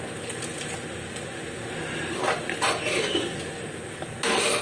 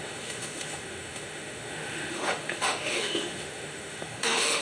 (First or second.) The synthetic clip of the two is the second